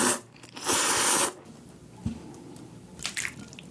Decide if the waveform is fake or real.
real